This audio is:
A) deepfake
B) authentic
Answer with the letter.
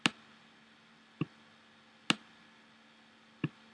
B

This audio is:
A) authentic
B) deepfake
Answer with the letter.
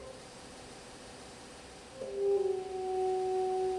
A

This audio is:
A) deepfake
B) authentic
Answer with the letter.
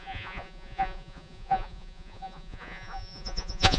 A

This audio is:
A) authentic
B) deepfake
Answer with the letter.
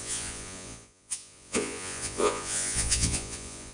B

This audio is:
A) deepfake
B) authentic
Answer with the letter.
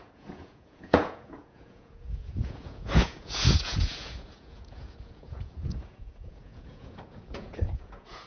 A